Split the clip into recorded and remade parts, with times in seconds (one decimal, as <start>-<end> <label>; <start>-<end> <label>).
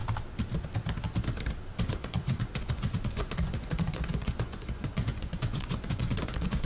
0.0-1.9 recorded; 1.9-6.7 remade